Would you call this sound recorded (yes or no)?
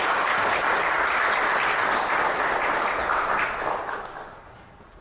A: yes